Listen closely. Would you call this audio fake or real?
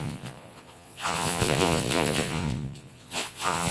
fake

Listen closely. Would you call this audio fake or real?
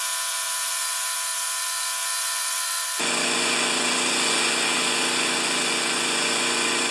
fake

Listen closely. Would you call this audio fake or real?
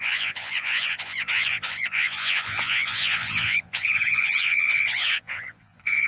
fake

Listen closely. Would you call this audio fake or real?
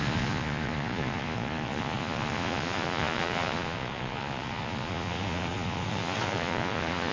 fake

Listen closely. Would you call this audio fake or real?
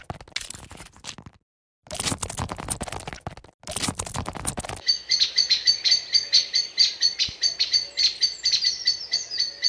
real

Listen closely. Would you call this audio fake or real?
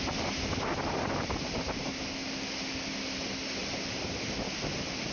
real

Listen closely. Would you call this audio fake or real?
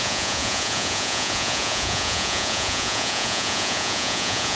fake